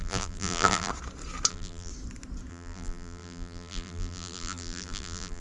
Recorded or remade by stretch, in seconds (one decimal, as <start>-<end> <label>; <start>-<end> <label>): 0.0-0.9 remade; 0.9-1.5 recorded; 1.5-1.9 remade; 1.9-2.5 recorded; 2.5-5.4 remade